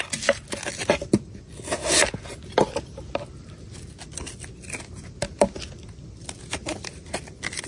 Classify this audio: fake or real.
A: real